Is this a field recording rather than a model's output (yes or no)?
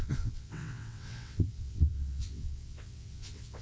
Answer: no